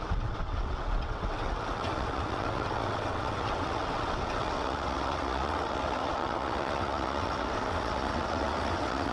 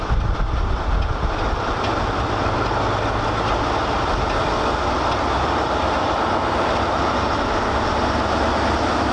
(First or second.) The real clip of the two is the second